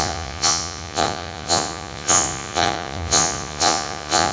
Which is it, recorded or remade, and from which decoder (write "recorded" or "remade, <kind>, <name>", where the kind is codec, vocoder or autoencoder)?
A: remade, vocoder, Vocos